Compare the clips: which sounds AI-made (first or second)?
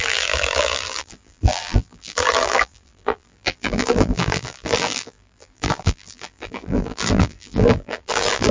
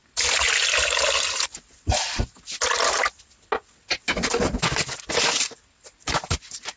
first